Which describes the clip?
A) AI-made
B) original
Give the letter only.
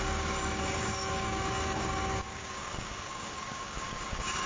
A